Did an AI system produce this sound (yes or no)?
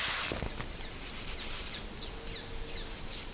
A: no